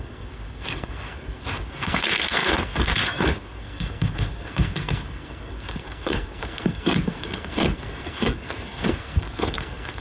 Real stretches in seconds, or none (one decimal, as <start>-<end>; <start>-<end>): none